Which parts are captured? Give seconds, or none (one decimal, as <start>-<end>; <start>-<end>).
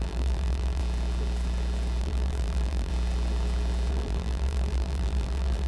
0.8-2.0; 2.9-3.9